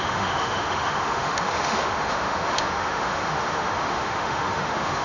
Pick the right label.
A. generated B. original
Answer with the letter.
A